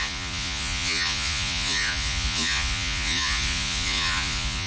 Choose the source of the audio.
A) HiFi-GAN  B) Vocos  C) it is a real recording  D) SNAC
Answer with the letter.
B